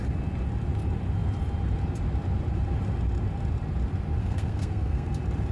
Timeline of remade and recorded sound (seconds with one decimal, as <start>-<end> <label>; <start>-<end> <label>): 0.0-4.2 recorded; 4.2-5.1 remade; 5.1-5.5 recorded